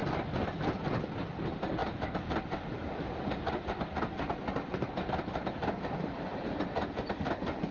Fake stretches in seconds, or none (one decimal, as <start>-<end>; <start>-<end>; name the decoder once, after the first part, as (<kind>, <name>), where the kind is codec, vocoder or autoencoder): none